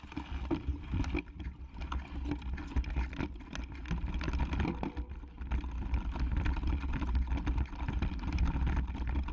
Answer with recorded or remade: recorded